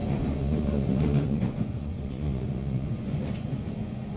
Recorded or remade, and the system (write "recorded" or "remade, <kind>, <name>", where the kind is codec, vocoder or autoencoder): remade, vocoder, Vocos